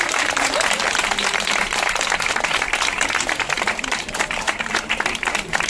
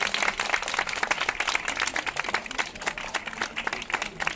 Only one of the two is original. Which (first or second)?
second